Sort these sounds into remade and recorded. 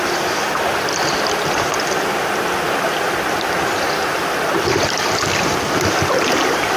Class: recorded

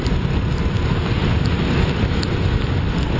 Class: recorded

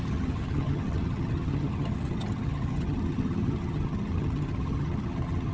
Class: remade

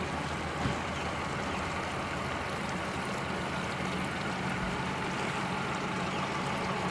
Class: recorded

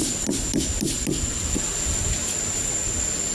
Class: recorded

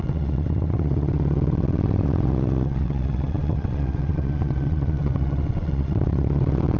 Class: remade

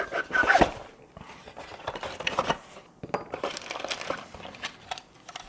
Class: recorded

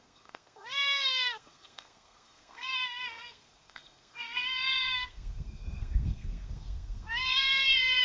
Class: remade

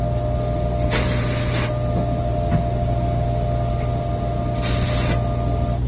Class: recorded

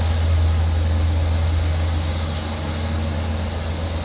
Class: recorded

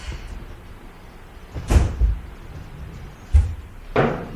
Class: recorded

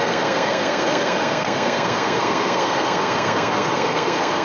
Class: remade